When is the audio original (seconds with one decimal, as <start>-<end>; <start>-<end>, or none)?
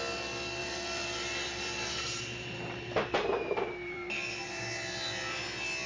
0.0-0.6; 4.1-5.9